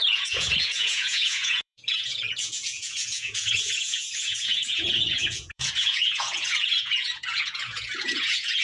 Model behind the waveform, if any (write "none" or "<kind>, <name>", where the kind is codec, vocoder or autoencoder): vocoder, Vocos